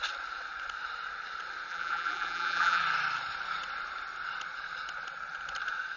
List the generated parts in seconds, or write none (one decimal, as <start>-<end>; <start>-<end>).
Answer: 1.7-2.8